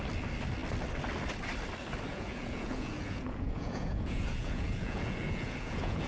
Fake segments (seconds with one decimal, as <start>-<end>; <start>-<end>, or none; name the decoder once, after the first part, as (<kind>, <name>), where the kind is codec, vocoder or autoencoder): 2.1-6.1 (vocoder, Vocos)